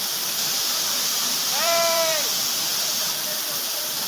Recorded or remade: remade